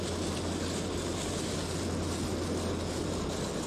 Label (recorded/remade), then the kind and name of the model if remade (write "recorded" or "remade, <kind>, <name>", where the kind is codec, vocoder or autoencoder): recorded